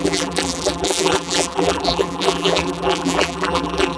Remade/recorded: remade